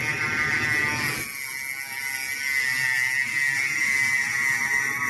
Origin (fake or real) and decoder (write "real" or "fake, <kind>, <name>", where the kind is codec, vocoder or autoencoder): real